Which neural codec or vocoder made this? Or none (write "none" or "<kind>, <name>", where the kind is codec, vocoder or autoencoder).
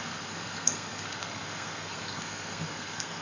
codec, SNAC